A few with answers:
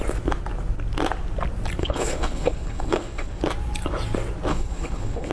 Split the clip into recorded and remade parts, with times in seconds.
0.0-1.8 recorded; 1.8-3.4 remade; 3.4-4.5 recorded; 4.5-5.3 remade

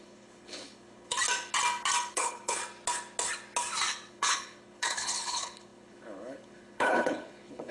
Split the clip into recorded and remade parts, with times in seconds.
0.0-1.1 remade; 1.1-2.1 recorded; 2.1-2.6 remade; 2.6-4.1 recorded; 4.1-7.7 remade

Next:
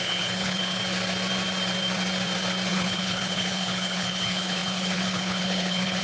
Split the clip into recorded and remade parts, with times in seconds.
0.0-0.8 remade; 0.8-2.7 recorded; 2.7-6.0 remade

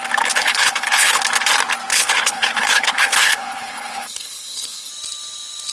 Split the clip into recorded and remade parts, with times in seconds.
0.0-0.4 recorded; 0.4-1.2 remade; 1.2-1.9 recorded; 1.9-4.9 remade; 4.9-5.7 recorded